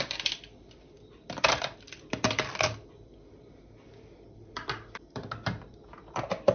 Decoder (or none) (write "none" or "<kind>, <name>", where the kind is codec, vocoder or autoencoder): vocoder, BigVGAN v2